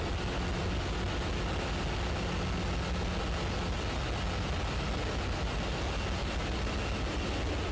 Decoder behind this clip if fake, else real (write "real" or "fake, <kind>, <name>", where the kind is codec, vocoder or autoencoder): real